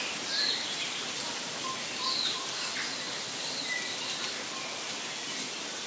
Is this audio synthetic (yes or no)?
no